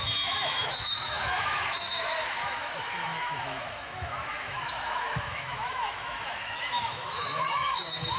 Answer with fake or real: fake